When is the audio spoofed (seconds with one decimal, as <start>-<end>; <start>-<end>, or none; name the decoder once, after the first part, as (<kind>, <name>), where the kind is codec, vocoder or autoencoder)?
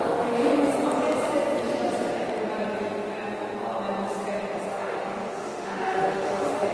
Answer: 0.0-0.7 (autoencoder, DAC-VAE); 4.7-6.7